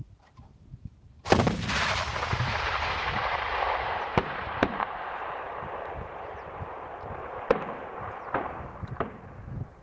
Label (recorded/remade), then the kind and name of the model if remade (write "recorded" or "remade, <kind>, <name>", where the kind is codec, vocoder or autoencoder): remade, vocoder, BigVGAN v2